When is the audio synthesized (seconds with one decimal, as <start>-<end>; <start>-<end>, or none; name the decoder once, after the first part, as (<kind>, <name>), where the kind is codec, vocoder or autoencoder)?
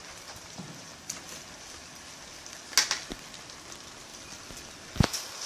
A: 0.0-2.6 (vocoder, BigVGAN v2); 4.1-5.5